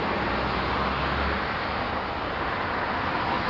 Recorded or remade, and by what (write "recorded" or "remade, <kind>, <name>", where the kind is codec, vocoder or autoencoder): recorded